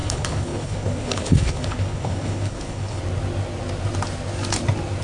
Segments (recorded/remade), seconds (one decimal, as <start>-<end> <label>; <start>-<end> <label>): 0.0-3.0 remade; 3.0-5.0 recorded